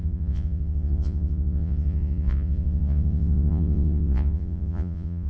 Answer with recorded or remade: remade